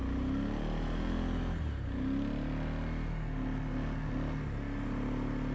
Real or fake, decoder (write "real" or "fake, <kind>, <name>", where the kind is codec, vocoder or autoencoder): real